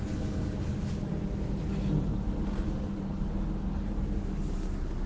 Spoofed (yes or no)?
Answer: no